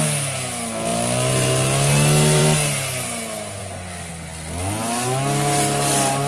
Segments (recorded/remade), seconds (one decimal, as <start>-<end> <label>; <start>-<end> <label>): 0.0-6.3 recorded